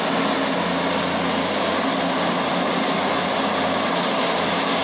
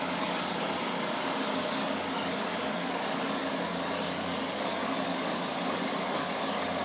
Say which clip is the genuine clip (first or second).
first